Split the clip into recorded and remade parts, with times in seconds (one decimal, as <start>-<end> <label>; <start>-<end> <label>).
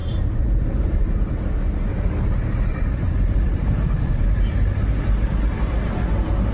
0.0-1.1 remade; 1.1-1.9 recorded; 1.9-4.4 remade; 4.4-6.5 recorded